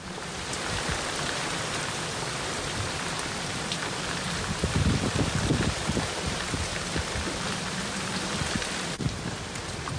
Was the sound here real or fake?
fake